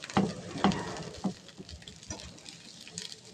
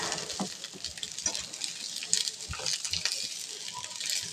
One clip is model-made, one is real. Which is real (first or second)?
second